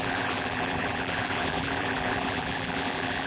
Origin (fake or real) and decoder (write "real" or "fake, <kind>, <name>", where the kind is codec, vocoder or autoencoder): fake, vocoder, BigVGAN v2